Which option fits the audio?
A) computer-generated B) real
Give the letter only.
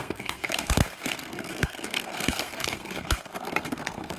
A